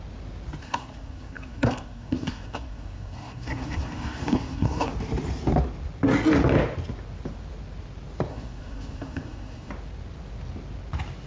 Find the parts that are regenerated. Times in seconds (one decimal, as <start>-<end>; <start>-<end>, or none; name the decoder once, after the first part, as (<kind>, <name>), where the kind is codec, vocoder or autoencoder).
0.6-4.9 (codec, SNAC); 8.3-9.7